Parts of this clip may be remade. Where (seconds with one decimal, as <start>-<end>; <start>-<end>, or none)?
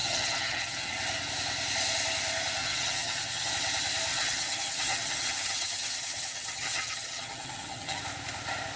0.0-0.9; 2.6-3.5; 4.1-8.0